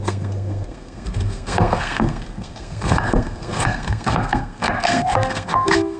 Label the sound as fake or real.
fake